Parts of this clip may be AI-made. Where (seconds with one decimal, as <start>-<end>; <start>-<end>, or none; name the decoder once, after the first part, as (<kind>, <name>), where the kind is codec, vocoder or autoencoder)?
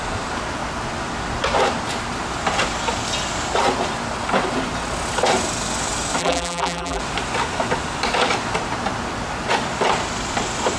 6.2-7.0 (vocoder, BigVGAN v2)